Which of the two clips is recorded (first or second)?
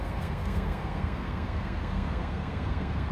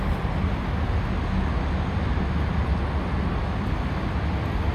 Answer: second